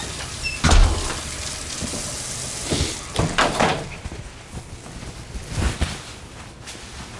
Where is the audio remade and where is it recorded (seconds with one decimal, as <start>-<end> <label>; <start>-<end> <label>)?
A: 0.0-7.2 recorded